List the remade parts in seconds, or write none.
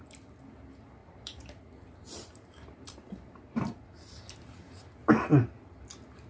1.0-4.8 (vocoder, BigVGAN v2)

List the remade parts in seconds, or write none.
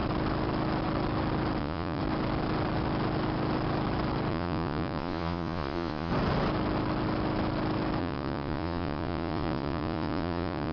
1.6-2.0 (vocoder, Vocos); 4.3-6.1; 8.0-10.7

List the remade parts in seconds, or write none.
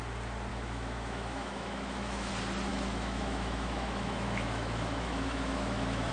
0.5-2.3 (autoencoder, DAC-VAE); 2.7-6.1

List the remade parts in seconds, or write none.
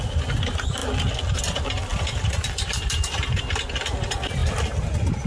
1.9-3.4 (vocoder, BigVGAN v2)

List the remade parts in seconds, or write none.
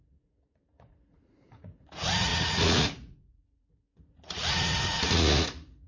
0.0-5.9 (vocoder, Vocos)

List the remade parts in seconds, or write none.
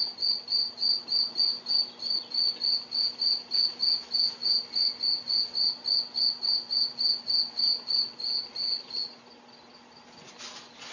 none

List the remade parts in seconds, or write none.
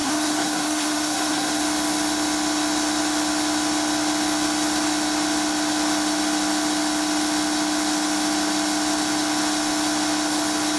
0.0-1.6 (codec, SNAC)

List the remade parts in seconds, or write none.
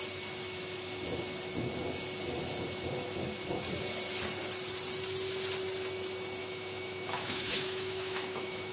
6.4-8.7 (autoencoder, DAC-VAE)